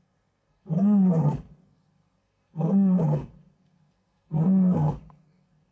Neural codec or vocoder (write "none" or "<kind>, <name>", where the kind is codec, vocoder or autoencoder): codec, SNAC